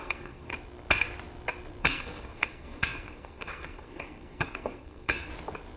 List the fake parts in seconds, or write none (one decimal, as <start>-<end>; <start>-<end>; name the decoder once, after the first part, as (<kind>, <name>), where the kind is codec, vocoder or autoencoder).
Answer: 0.0-0.5 (codec, SNAC); 1.8-5.3